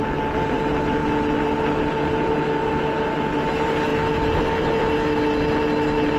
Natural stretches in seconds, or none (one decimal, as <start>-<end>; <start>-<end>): 0.0-6.2